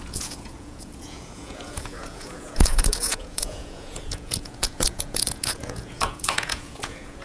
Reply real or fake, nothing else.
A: fake